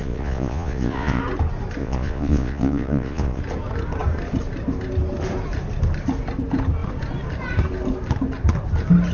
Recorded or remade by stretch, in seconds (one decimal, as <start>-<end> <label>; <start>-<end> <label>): 0.0-1.2 remade; 1.2-1.8 recorded; 1.8-3.4 remade; 3.4-9.1 recorded